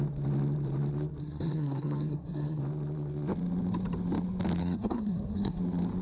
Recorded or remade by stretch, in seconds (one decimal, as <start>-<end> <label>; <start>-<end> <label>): 0.0-1.2 recorded; 1.2-2.6 remade; 2.6-4.6 recorded; 4.6-5.6 remade; 5.6-6.0 recorded